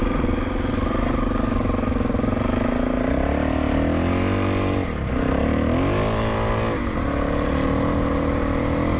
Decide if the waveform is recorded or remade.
recorded